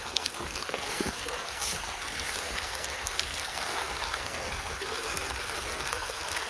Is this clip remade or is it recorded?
remade